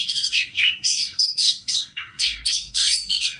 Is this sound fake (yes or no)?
yes